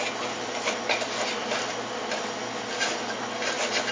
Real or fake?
real